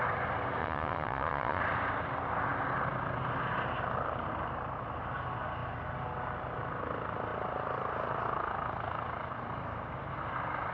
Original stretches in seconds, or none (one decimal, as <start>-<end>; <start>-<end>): 0.0-0.6; 1.6-10.7